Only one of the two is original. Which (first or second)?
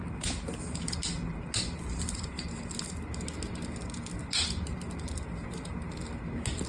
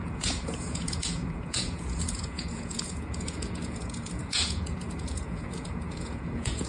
first